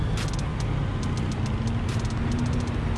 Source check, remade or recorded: recorded